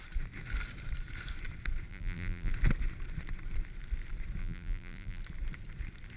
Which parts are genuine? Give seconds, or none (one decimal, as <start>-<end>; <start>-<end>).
0.0-1.9; 2.5-4.4; 5.2-6.2